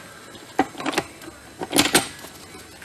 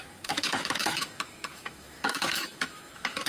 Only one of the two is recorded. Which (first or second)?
first